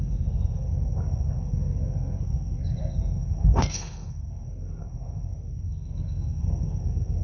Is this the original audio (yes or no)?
no